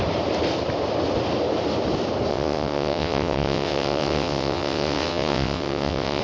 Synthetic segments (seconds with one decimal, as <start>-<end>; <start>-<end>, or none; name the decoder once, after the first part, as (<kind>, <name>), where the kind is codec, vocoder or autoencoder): 2.3-6.2 (vocoder, WaveNeXt)